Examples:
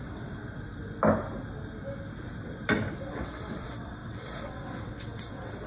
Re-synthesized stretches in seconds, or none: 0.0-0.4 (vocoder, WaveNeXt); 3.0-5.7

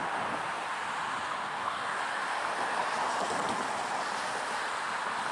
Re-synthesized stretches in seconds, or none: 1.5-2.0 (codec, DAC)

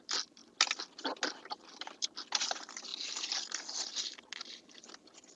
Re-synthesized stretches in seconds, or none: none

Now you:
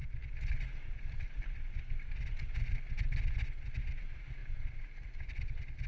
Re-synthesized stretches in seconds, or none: none

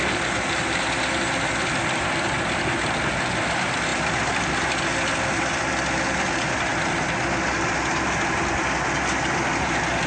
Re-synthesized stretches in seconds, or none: 0.0-0.8 (vocoder, BigVGAN v2)

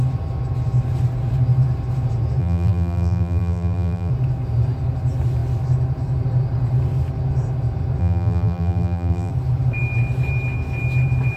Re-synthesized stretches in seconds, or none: 2.4-4.1 (vocoder, BigVGAN v2); 8.0-9.3